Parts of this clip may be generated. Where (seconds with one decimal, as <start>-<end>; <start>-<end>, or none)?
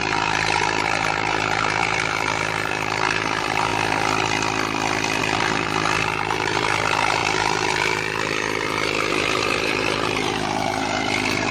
0.0-3.7; 5.2-11.5